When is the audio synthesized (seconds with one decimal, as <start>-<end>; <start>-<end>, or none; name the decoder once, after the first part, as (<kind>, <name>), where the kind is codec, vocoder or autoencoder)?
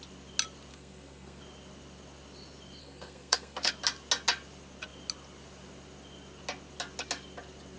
0.7-1.4 (codec, SNAC); 2.8-3.7